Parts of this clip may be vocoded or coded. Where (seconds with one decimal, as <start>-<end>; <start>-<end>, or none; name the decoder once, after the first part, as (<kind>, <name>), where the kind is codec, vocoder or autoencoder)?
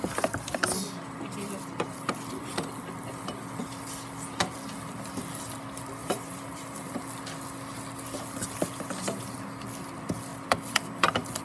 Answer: 6.0-7.0 (vocoder, BigVGAN v2)